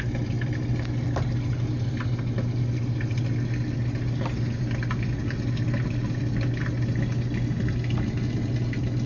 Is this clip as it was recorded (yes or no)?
yes